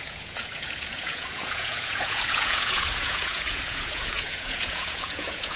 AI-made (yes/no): yes